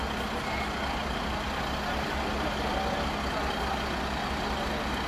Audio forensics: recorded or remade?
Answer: recorded